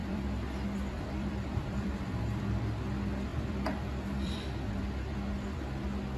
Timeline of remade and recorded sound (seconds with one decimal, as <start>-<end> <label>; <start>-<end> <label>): 0.0-2.6 remade; 2.6-3.3 recorded; 3.3-4.8 remade; 4.8-6.2 recorded